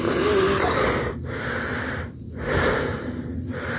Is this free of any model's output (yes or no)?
yes